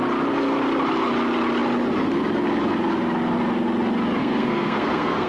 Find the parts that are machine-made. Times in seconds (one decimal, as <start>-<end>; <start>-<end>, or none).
4.2-5.3